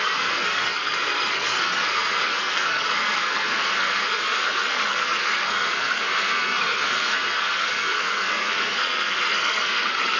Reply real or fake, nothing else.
fake